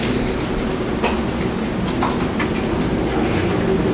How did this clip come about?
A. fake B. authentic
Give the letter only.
B